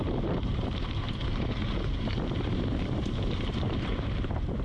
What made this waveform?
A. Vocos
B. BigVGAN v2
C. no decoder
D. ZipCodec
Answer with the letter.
B